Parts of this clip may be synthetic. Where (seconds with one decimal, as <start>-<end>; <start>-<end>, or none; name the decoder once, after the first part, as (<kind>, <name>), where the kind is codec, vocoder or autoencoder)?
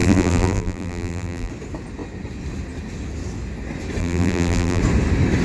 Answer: 0.0-1.5 (vocoder, BigVGAN v2); 4.0-4.8